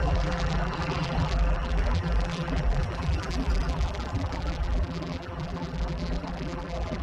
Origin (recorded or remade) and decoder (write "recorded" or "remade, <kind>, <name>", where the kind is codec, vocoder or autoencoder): remade, vocoder, BigVGAN v2